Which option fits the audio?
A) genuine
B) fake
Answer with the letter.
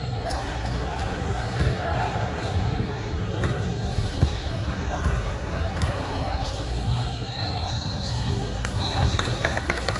B